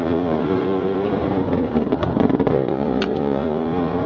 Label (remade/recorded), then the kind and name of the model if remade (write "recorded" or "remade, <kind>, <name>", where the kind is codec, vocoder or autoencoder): remade, vocoder, Vocos